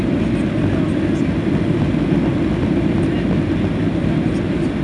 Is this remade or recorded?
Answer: recorded